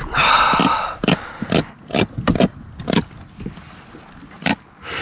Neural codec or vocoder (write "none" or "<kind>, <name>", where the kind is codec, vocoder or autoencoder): none